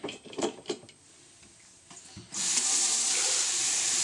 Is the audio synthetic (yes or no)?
yes